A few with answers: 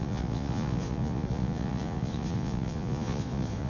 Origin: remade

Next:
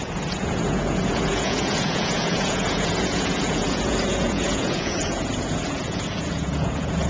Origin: remade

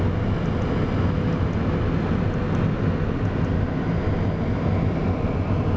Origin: recorded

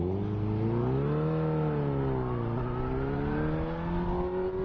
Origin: recorded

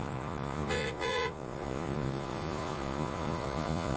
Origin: remade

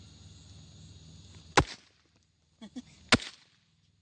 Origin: recorded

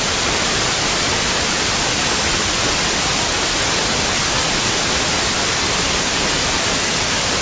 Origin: recorded